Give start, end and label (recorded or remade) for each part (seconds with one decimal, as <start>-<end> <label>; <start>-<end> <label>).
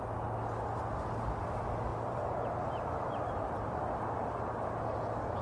0.0-1.9 recorded; 1.9-3.8 remade; 3.8-5.4 recorded